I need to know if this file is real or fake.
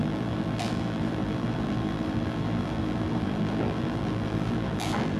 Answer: fake